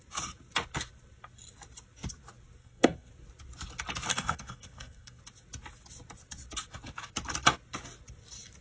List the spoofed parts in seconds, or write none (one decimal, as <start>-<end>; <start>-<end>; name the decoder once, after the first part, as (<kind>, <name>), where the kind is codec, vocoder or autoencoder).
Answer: 2.6-3.1 (codec, SNAC); 4.1-5.2